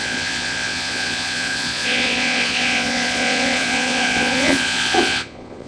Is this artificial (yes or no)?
yes